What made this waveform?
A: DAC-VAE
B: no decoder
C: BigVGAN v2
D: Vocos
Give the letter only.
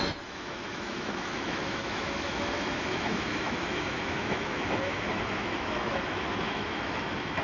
A